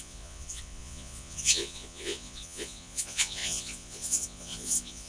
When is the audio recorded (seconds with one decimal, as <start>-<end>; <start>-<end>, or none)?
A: none